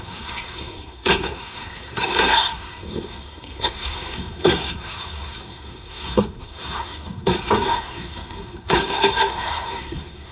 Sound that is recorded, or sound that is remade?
remade